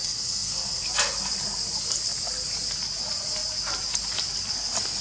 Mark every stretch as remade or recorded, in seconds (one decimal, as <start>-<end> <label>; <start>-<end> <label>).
0.0-0.8 remade; 0.8-5.0 recorded